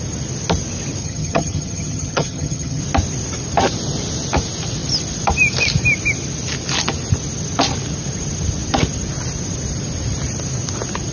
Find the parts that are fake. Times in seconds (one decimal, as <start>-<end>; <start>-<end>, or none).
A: 1.0-2.8